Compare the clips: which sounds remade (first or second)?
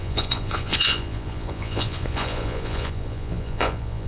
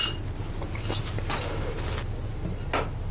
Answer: first